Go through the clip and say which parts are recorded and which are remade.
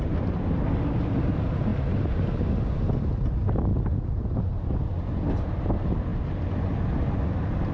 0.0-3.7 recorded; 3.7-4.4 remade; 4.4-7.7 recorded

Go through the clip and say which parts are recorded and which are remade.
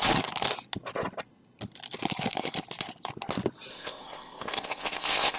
0.0-3.7 recorded; 3.7-5.4 remade